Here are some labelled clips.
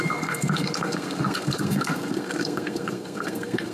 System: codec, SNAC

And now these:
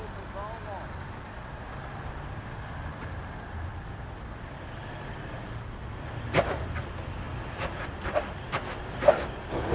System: none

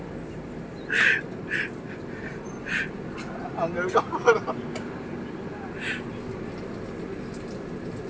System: none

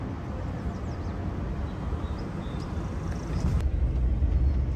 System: none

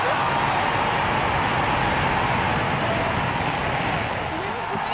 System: none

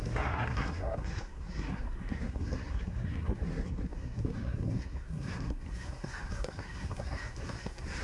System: codec, SNAC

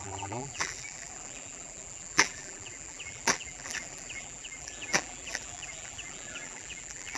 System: vocoder, BigVGAN v2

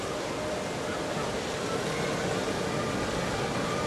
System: none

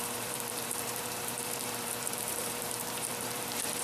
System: vocoder, BigVGAN v2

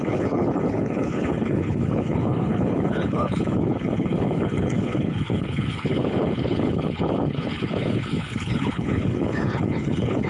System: codec, HILCodec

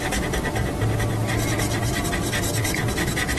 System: none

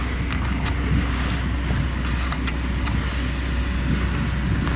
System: none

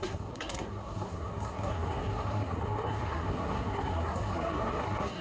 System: codec, SNAC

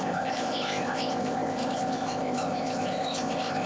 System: codec, ZipCodec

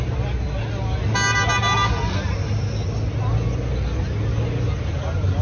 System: none